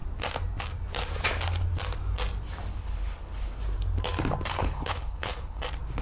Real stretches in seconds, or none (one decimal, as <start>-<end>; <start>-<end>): 0.0-2.7; 3.6-4.6; 5.6-6.0